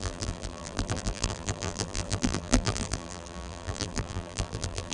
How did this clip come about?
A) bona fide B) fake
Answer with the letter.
B